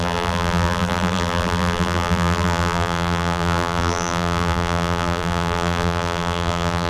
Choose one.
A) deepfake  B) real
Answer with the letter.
A